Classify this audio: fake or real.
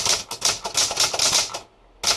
real